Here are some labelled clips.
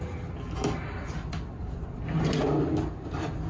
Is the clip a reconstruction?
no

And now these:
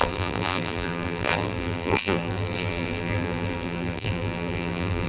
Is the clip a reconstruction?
yes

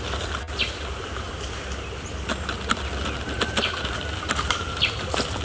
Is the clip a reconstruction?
no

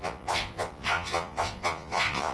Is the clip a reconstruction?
yes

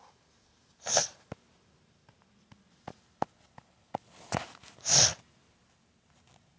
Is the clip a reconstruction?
no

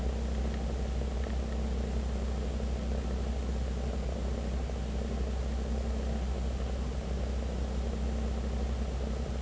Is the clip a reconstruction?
no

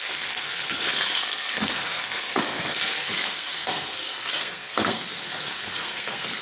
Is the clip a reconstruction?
yes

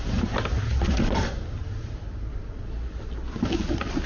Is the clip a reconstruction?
no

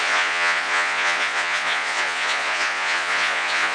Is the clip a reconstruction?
yes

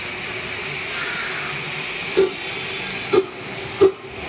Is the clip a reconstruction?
no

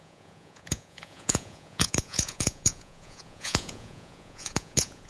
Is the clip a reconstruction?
yes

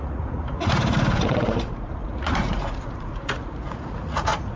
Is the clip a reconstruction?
yes